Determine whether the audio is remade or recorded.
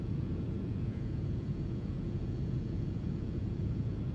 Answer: remade